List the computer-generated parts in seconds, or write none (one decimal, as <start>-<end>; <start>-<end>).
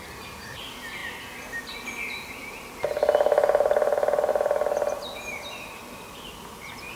none